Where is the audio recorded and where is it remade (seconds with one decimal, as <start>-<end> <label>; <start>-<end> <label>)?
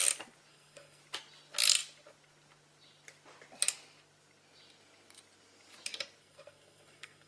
0.0-0.5 recorded; 0.5-1.0 remade; 1.0-6.2 recorded; 6.2-7.3 remade